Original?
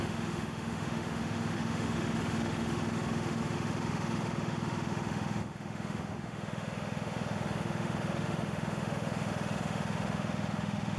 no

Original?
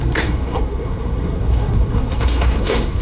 no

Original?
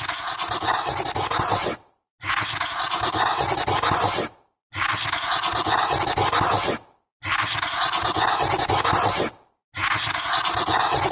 yes